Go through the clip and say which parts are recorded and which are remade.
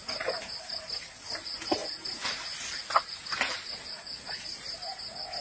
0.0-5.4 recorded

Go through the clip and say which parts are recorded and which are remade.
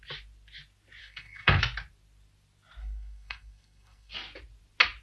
0.0-1.0 recorded; 1.0-1.6 remade; 1.6-2.8 recorded; 2.8-4.1 remade; 4.1-5.0 recorded